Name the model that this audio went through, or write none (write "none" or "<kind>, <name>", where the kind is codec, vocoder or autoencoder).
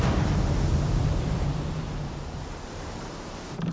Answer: vocoder, BigVGAN v2